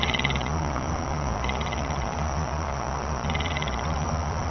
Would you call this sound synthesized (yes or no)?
yes